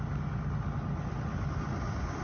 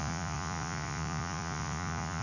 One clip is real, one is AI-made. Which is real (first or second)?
first